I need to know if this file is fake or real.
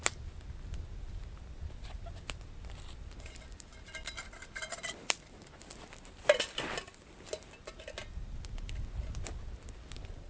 real